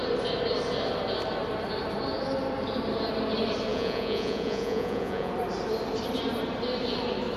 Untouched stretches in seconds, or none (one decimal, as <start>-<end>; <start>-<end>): 0.0-3.7; 5.3-7.4

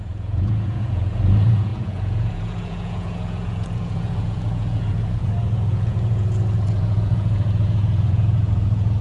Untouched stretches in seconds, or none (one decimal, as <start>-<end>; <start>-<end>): none

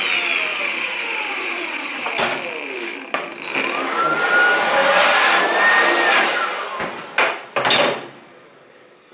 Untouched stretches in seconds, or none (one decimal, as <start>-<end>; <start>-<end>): 0.0-0.5; 2.1-9.1

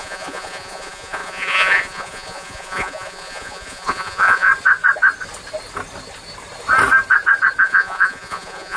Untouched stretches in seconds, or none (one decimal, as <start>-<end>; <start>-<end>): 4.5-7.6

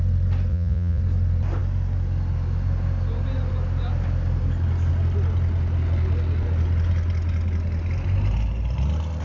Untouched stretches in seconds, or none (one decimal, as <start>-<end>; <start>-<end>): 0.0-0.5; 1.0-9.2

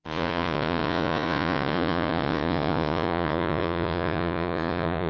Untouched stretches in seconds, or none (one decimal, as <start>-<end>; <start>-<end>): none

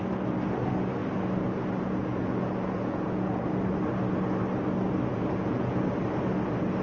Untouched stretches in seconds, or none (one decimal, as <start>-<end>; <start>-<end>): 0.0-2.0; 3.4-5.1; 5.8-6.8

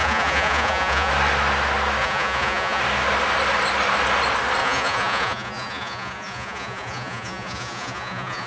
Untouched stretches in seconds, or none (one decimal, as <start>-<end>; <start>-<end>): 1.1-2.0; 2.8-4.6